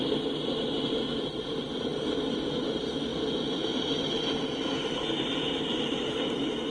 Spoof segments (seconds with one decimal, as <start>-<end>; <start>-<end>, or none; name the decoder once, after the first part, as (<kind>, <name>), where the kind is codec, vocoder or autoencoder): none